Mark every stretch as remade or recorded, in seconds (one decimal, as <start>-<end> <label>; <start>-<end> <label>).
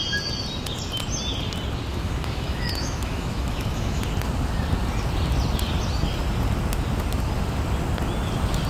0.0-1.9 recorded; 1.9-4.0 remade; 4.0-8.7 recorded